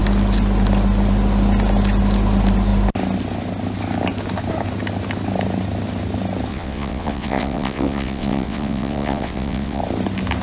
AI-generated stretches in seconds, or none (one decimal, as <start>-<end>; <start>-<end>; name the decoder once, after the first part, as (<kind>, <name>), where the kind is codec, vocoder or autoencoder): 6.5-9.8 (vocoder, WaveNeXt)